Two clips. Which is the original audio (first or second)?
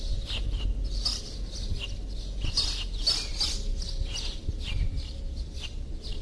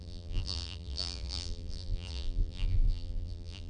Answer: first